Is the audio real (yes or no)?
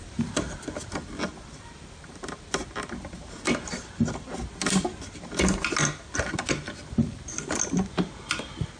yes